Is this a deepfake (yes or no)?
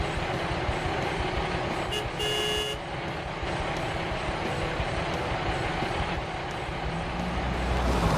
no